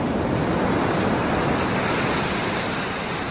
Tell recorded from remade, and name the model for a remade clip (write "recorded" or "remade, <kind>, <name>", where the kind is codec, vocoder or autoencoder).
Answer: recorded